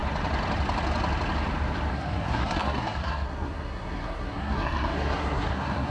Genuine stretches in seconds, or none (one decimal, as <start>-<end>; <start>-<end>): 0.0-1.9